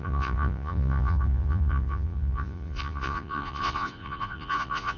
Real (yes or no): no